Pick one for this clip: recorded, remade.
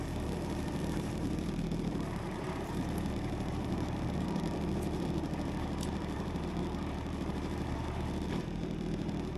remade